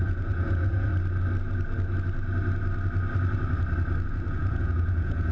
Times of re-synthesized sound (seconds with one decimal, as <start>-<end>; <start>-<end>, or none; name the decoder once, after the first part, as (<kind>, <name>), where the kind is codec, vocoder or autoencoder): 0.0-0.9 (vocoder, Vocos); 4.1-5.3

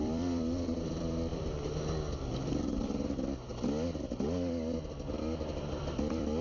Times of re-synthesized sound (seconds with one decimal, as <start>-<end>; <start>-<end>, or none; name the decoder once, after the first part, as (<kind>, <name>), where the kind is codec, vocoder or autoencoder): 0.0-1.3 (vocoder, BigVGAN v2); 2.3-3.5; 5.7-6.4

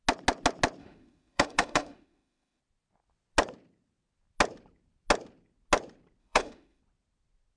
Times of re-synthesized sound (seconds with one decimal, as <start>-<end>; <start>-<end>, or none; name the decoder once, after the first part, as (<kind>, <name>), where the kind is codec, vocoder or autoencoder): 0.8-2.6 (autoencoder, DAC-VAE); 6.2-6.8

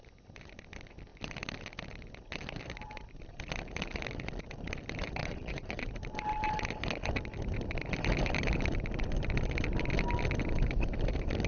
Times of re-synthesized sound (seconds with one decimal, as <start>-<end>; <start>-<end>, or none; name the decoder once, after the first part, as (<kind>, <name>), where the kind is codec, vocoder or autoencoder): 5.2-5.9 (vocoder, Vocos)

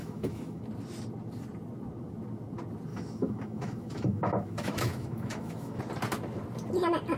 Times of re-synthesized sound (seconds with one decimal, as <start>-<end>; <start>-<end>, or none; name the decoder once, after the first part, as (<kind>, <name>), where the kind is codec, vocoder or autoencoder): 0.0-0.6 (autoencoder, DAC-VAE); 2.9-5.8

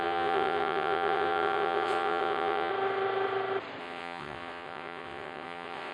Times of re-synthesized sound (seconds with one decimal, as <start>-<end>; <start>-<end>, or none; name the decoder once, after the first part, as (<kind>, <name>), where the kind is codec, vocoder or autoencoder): 0.0-2.7 (vocoder, WaveNeXt); 3.8-5.9

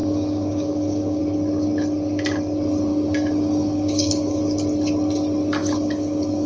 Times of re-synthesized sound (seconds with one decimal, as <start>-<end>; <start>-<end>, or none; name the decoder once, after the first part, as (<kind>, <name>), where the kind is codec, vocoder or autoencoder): 0.0-1.2 (codec, DAC); 2.9-4.4; 5.6-6.5

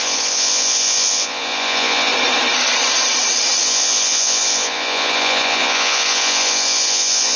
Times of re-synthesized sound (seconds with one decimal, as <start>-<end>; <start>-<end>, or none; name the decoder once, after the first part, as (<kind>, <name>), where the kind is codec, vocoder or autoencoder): 0.0-2.1 (vocoder, Vocos); 3.6-7.4